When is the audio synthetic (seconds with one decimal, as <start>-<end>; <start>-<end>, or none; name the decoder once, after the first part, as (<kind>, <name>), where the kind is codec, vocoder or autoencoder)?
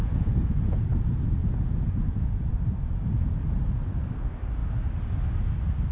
0.0-0.8 (vocoder, Vocos); 1.4-2.5